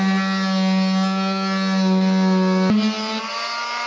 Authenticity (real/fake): real